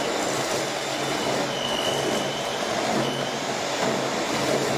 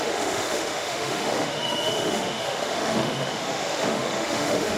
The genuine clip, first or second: first